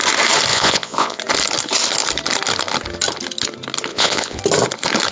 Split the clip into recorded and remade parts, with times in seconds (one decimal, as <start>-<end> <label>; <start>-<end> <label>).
0.0-0.5 recorded; 0.5-1.2 remade; 1.2-3.9 recorded; 3.9-4.4 remade; 4.4-5.1 recorded